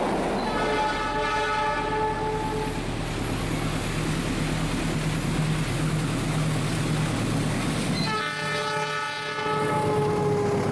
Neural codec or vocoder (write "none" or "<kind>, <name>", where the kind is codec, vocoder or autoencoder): none